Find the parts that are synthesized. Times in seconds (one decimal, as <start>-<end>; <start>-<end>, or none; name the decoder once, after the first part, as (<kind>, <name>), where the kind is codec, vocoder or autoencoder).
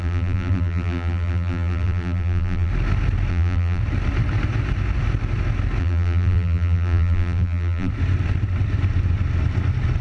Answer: 0.0-2.7 (vocoder, BigVGAN v2); 3.3-3.8; 5.8-7.9